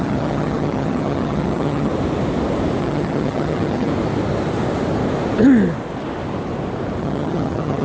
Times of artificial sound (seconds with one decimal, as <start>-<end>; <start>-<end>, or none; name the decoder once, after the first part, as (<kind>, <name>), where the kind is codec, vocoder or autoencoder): 0.0-1.9 (vocoder, HiFi-GAN); 2.8-3.9; 7.0-7.8